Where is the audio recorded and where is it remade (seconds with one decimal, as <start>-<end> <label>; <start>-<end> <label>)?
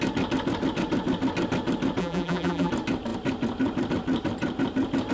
0.0-2.0 recorded; 2.0-2.7 remade; 2.7-5.1 recorded